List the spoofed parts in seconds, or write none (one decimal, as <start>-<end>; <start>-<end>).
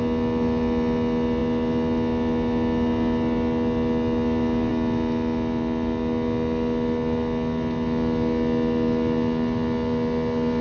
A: none